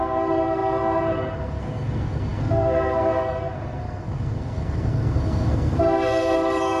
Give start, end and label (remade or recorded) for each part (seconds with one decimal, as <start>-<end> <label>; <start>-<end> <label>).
0.0-6.8 remade